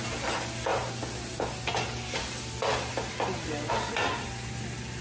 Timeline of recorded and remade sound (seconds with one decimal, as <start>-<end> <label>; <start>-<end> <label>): 0.0-5.0 recorded